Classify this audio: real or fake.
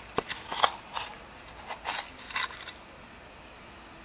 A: real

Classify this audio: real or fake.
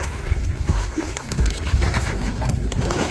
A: fake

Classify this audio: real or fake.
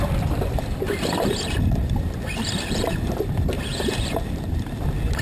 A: fake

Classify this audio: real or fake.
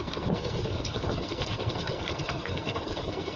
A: fake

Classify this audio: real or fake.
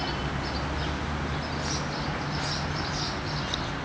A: real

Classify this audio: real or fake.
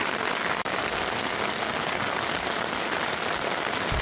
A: real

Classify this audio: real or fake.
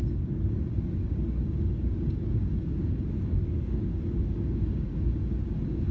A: fake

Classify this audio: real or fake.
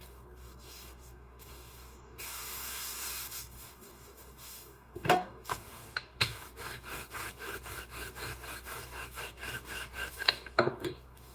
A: fake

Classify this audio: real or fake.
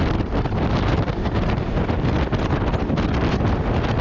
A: real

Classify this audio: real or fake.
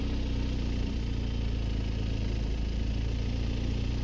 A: real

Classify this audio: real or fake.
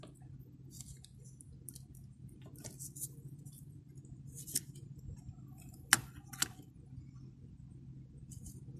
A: real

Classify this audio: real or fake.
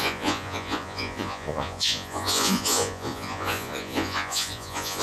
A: fake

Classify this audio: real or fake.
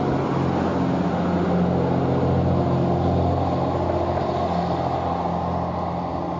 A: real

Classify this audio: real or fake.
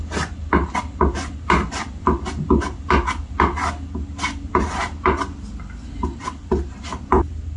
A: real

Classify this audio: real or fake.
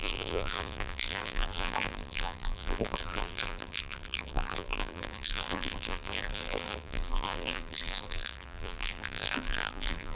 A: fake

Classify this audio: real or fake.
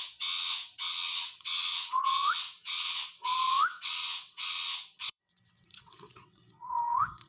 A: fake